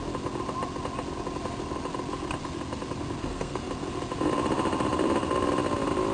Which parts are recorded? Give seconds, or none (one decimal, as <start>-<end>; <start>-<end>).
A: 0.0-3.2; 3.7-6.1